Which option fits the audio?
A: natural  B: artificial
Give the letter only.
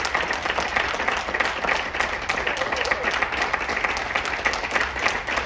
A